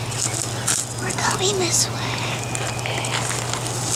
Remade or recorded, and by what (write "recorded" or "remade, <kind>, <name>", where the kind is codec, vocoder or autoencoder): recorded